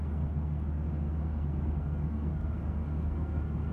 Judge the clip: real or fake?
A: fake